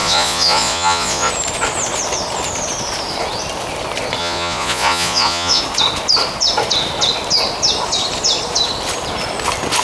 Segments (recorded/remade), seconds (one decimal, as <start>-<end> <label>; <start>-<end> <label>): 0.0-1.3 remade; 1.3-4.2 recorded; 4.2-5.6 remade; 5.6-9.8 recorded